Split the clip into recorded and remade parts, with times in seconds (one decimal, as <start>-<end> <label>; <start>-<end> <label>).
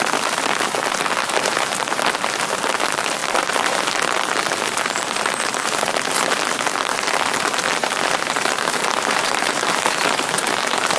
0.0-1.2 recorded; 1.2-2.0 remade; 2.0-3.2 recorded; 3.2-3.9 remade; 3.9-7.8 recorded; 7.8-11.0 remade